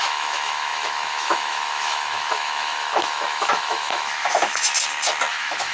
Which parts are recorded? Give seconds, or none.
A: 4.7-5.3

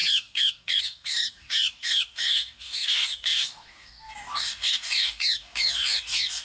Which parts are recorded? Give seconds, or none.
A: none